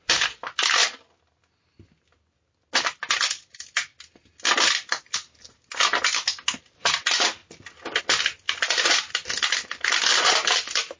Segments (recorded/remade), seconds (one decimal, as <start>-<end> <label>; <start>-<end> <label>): 0.0-11.0 recorded